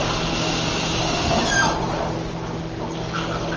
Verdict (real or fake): real